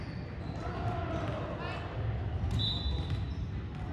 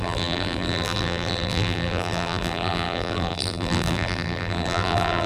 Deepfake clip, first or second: second